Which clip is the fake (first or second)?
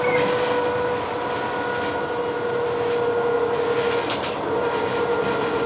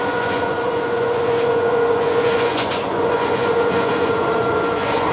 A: second